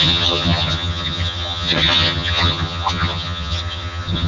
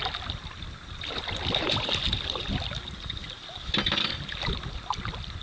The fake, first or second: first